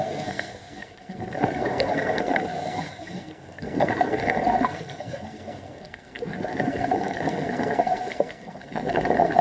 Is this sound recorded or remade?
remade